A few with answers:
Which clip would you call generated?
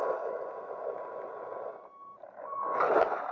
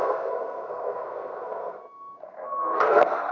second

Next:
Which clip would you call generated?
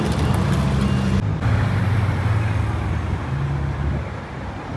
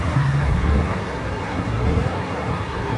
second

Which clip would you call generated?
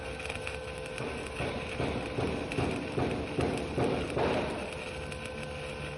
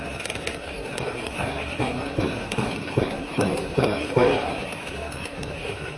second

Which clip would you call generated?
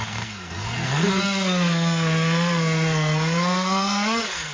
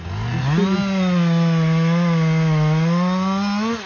first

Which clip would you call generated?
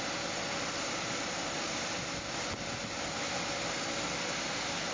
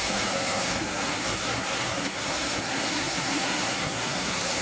second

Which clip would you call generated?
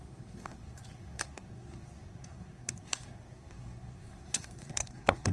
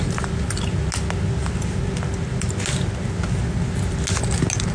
first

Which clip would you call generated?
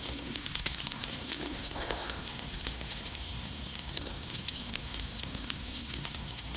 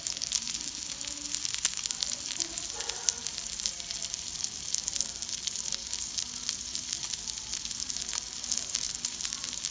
first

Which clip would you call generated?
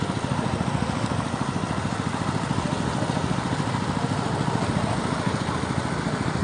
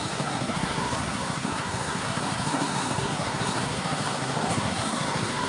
second